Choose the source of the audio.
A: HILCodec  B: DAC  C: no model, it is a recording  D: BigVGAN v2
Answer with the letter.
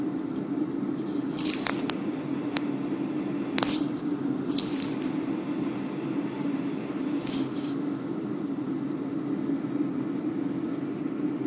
C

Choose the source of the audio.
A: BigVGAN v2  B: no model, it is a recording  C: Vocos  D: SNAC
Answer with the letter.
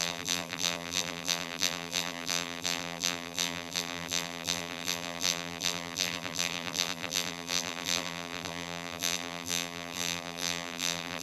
A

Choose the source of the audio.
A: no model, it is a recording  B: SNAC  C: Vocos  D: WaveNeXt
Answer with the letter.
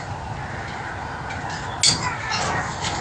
A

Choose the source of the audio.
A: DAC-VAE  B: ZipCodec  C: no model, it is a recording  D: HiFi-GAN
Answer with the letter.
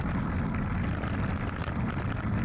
C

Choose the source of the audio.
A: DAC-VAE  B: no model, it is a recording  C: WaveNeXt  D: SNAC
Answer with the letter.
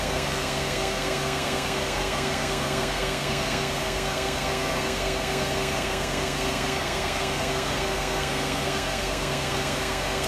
D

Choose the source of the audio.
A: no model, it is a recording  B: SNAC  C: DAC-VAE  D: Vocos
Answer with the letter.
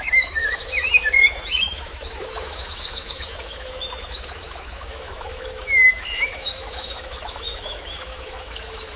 C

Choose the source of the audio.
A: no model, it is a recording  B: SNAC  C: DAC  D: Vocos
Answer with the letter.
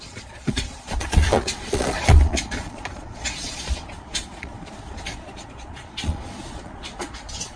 D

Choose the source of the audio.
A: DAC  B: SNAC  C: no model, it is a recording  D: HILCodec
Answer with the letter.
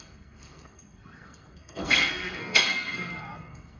B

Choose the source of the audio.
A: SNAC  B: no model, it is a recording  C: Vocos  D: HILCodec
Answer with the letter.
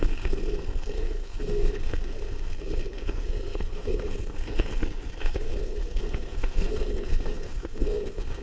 A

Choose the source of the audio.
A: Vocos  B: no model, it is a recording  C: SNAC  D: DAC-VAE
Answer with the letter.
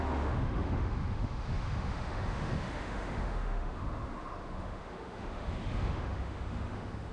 D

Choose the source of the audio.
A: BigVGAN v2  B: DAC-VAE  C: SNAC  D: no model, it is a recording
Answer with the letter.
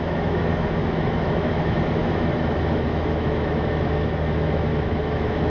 B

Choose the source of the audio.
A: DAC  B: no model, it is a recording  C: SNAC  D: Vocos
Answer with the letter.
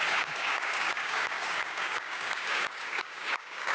A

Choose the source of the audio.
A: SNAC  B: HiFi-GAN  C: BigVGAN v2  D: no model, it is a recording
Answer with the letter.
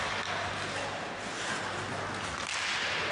D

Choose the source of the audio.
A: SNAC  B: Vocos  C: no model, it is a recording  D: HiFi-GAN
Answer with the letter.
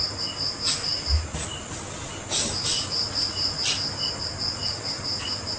C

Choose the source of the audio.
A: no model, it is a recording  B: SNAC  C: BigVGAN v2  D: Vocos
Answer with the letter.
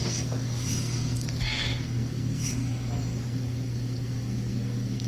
B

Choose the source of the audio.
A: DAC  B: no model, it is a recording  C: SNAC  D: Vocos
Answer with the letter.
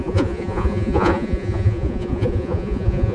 D